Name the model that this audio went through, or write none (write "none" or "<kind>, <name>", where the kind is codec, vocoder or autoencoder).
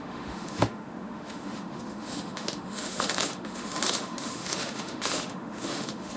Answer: autoencoder, DAC-VAE